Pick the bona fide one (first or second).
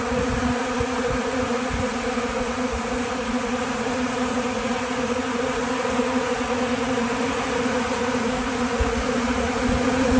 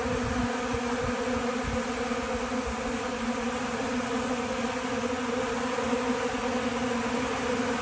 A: second